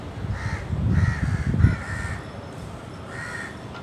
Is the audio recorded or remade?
remade